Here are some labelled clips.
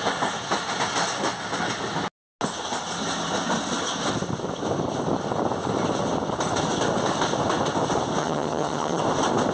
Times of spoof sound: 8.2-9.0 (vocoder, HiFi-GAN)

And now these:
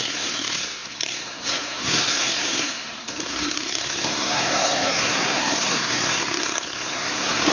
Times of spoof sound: 0.0-7.5 (codec, SNAC)